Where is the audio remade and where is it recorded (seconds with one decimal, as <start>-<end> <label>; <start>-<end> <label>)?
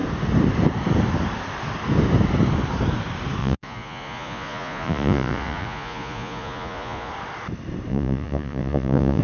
0.0-3.4 recorded; 3.4-7.1 remade; 7.1-7.9 recorded; 7.9-9.2 remade